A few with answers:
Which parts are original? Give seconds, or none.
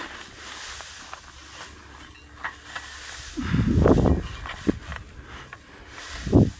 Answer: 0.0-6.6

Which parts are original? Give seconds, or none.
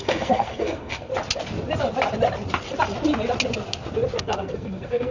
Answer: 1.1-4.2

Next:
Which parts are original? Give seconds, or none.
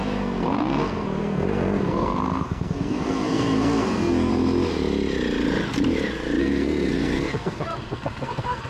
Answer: 4.3-6.4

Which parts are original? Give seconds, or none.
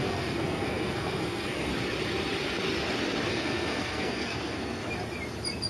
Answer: 1.7-3.3; 4.8-5.7